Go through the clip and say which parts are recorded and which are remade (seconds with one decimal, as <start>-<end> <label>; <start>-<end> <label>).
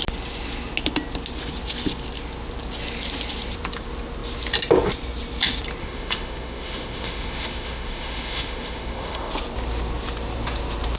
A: 0.0-5.8 recorded; 5.8-9.3 remade; 9.3-11.0 recorded